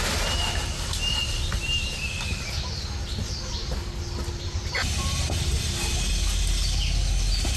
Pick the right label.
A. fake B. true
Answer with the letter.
B